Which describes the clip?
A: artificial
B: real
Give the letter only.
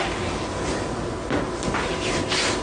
B